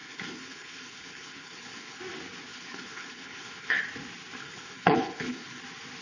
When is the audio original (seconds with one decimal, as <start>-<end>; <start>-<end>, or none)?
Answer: 2.0-2.5; 3.8-4.4; 5.6-6.0